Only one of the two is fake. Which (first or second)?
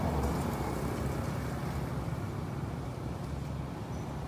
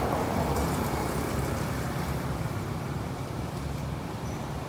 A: second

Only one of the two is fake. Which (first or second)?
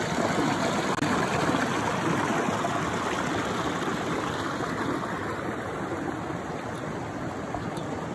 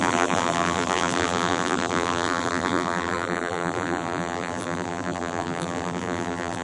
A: second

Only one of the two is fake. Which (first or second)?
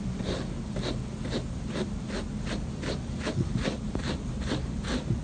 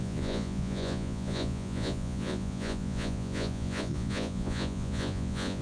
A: second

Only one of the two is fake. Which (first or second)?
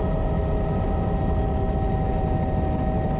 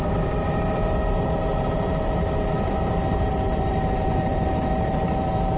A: second